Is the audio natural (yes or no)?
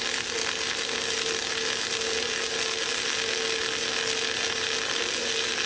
yes